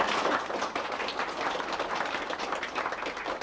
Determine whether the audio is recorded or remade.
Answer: recorded